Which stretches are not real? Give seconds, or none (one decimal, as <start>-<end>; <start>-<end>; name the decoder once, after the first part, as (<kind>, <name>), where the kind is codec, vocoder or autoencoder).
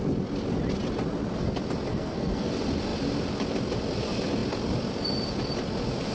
1.9-2.5 (codec, SNAC)